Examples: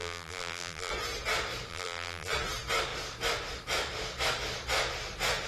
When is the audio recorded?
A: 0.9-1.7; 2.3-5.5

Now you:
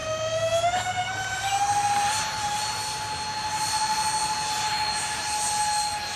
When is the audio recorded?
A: 0.0-6.2

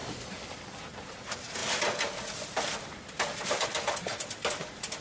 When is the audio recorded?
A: 0.0-5.0